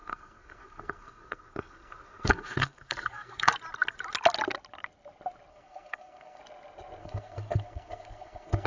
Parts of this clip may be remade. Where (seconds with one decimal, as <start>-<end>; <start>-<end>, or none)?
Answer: 0.0-3.5; 5.5-6.4; 7.0-8.7